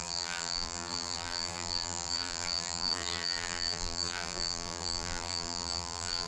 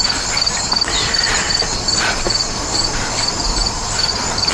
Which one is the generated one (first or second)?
first